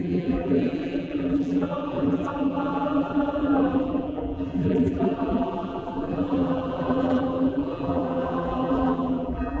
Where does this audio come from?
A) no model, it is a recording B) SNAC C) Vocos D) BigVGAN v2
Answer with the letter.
D